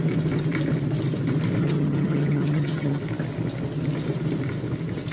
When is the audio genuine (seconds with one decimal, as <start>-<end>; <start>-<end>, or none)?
0.0-1.6; 3.0-5.1